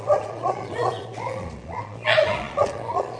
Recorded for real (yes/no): no